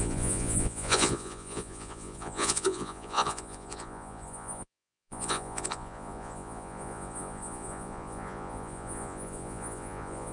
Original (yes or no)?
no